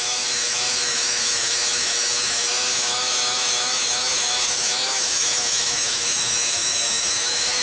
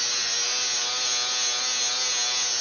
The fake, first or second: first